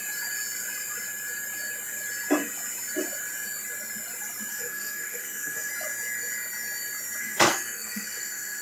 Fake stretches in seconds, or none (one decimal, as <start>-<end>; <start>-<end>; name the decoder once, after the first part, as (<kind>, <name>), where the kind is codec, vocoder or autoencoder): 4.5-5.7 (codec, SNAC); 7.2-8.6